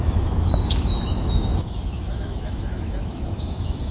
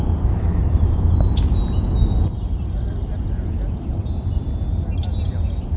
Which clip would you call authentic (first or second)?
second